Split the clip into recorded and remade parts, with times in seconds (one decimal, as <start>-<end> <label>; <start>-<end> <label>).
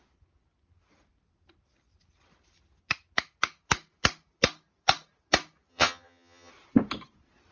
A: 0.0-5.7 recorded; 5.7-6.5 remade; 6.5-7.5 recorded